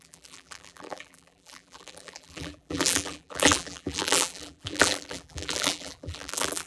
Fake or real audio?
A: fake